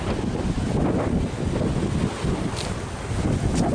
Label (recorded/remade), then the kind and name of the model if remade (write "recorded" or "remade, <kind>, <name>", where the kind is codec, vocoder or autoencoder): recorded